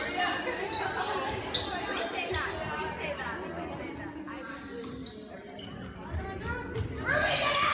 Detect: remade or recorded recorded